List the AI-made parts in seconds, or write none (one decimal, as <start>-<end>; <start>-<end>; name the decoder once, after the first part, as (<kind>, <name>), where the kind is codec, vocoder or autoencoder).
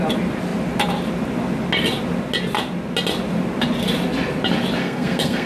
4.8-5.5 (codec, SNAC)